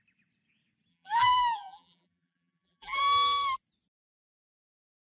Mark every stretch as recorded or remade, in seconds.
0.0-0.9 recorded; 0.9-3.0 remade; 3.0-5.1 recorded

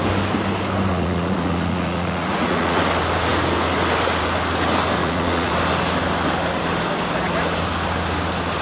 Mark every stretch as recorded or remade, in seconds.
0.0-0.9 recorded; 0.9-2.8 remade; 2.8-5.0 recorded; 5.0-5.5 remade; 5.5-8.6 recorded

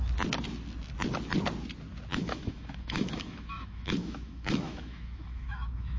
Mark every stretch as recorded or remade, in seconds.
0.0-2.1 recorded; 2.1-6.0 remade